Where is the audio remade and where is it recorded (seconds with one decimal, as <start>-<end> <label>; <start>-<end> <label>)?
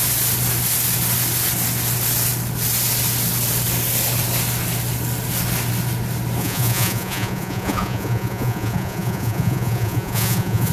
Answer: 0.0-6.4 recorded; 6.4-10.7 remade